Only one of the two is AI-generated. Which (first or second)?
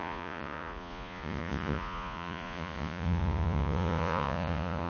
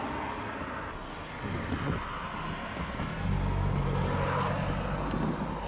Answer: first